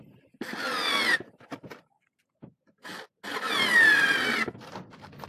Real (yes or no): yes